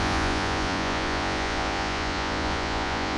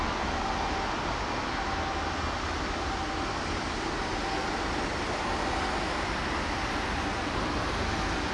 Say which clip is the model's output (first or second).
first